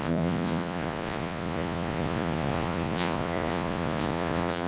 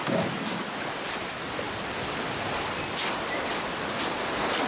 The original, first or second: second